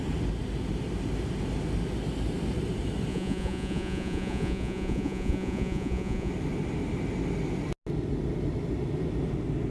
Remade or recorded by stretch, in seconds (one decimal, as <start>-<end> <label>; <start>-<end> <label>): 0.0-3.1 recorded; 3.1-6.3 remade; 6.3-9.7 recorded